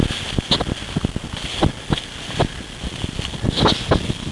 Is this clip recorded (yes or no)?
yes